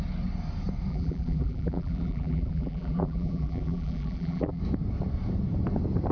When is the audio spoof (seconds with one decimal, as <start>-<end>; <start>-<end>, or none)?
0.9-4.6